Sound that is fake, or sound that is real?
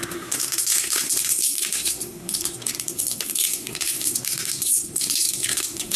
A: fake